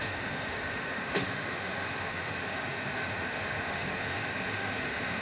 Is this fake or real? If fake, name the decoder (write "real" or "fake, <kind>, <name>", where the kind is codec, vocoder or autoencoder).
fake, autoencoder, DAC-VAE